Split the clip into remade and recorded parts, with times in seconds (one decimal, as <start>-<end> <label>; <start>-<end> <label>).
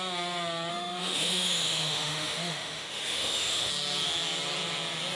0.0-0.7 recorded; 0.7-3.7 remade; 3.7-5.1 recorded